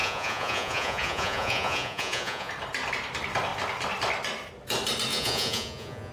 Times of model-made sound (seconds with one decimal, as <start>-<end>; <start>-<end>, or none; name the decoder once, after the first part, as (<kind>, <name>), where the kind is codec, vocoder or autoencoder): 0.0-2.5 (vocoder, Vocos); 5.1-6.1